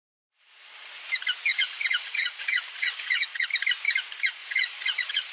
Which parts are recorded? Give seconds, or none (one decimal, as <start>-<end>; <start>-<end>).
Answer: 0.0-1.5; 3.5-4.4